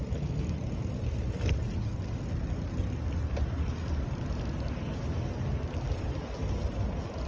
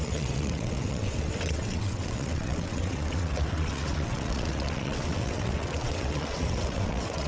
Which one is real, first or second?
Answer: first